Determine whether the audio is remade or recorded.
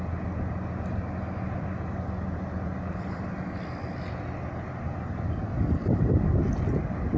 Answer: recorded